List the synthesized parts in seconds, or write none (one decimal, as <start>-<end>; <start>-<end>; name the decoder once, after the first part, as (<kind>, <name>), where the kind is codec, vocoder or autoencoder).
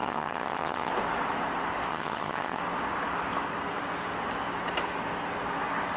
0.0-0.9 (vocoder, HiFi-GAN); 1.9-2.6